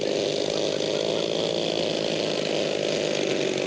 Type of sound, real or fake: real